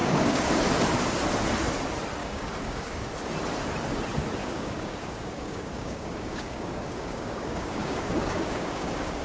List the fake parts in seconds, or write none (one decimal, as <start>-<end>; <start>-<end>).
0.0-0.5; 2.2-3.1; 4.4-9.2